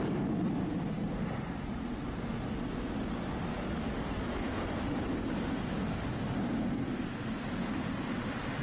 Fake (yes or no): no